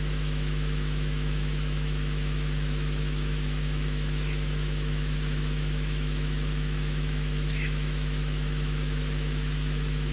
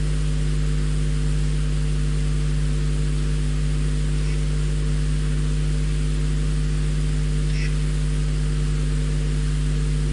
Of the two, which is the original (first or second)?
second